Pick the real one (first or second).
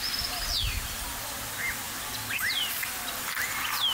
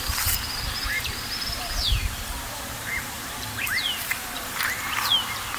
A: first